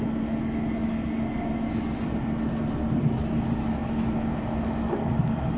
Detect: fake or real real